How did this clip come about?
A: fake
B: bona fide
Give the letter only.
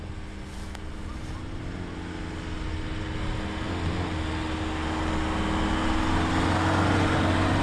B